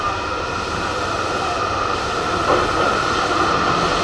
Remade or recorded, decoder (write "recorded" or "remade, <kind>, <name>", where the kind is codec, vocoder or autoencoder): remade, vocoder, BigVGAN v2